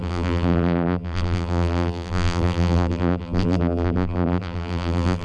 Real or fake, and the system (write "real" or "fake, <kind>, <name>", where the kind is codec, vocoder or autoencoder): fake, vocoder, BigVGAN v2